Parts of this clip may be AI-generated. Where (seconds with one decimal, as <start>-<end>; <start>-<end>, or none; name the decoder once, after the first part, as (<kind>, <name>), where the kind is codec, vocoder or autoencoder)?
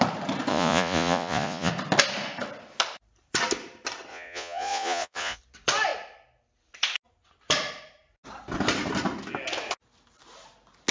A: 0.5-1.7 (vocoder, Vocos); 4.1-5.4